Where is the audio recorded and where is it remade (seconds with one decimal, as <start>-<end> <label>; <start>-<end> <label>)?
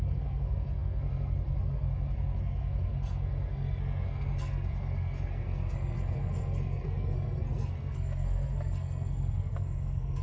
0.0-10.2 remade